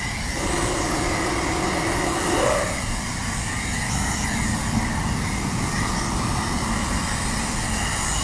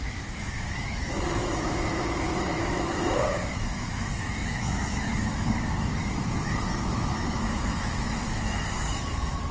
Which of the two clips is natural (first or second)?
first